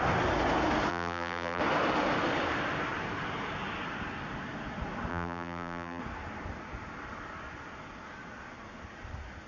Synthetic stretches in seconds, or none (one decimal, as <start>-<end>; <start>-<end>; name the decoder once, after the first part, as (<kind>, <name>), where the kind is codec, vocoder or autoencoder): 0.9-1.6 (vocoder, BigVGAN v2); 5.1-6.0